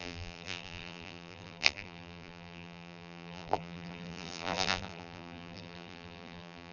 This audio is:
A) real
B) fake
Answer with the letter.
B